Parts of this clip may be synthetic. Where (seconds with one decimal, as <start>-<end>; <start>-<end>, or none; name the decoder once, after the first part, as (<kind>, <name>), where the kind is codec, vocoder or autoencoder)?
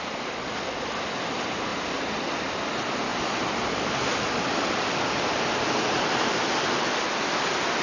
1.7-2.2 (vocoder, BigVGAN v2); 3.1-7.3